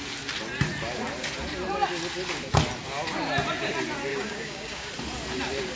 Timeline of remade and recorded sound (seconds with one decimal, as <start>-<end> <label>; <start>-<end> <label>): 0.0-4.1 recorded; 4.1-4.9 remade; 4.9-5.8 recorded